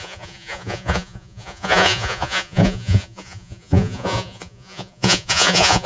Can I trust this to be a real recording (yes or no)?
no